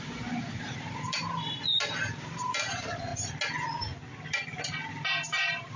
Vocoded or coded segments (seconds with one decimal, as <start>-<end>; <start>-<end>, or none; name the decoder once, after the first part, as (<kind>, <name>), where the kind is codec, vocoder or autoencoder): 0.0-1.2 (vocoder, BigVGAN v2); 1.9-3.1; 4.9-5.8